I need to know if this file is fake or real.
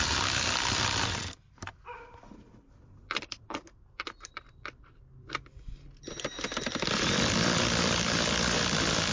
fake